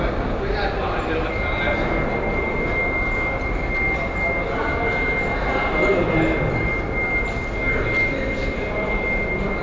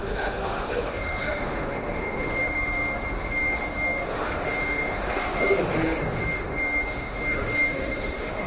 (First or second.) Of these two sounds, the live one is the first